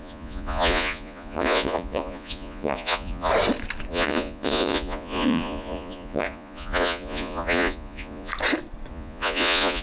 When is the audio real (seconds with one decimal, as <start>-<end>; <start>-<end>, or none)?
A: 3.3-3.9; 8.3-8.9